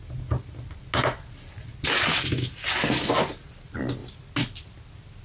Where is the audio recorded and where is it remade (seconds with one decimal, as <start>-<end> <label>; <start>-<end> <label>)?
0.0-5.2 recorded

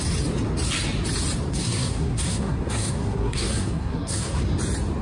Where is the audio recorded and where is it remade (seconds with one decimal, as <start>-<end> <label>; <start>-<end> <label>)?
0.0-1.5 recorded; 1.5-4.4 remade; 4.4-5.0 recorded

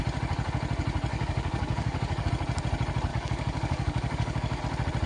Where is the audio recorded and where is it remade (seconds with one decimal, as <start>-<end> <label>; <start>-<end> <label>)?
0.0-1.1 recorded; 1.1-2.3 remade; 2.3-3.1 recorded; 3.1-4.6 remade; 4.6-5.1 recorded